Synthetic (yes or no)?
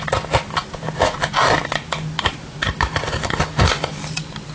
no